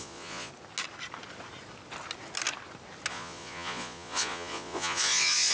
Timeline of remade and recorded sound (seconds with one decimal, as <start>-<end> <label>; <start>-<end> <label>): 0.0-0.5 remade; 0.5-3.1 recorded; 3.1-5.5 remade